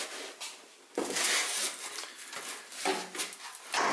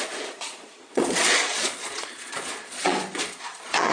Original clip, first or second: first